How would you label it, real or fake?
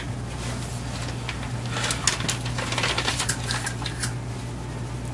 real